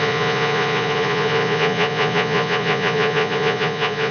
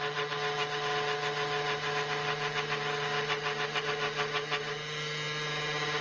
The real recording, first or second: second